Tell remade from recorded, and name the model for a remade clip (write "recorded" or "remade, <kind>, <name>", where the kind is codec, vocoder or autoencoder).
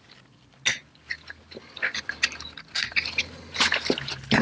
recorded